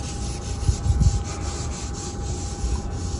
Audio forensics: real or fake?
real